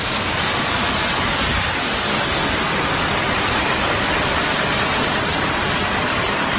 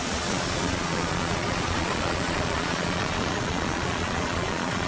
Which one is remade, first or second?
second